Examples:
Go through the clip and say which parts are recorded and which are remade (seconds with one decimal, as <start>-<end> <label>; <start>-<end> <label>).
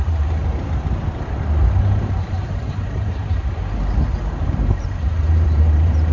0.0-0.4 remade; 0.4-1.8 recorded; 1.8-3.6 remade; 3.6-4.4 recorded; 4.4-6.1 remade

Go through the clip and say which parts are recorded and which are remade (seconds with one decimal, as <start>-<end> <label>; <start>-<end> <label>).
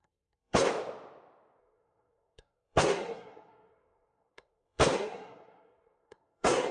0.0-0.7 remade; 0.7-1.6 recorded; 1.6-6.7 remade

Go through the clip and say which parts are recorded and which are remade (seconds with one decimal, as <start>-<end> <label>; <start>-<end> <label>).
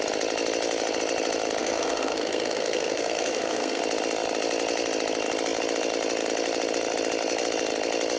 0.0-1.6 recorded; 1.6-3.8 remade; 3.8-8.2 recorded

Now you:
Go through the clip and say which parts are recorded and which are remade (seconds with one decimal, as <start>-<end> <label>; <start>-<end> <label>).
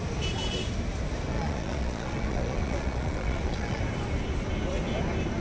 0.0-1.3 recorded; 1.3-3.8 remade; 3.8-5.4 recorded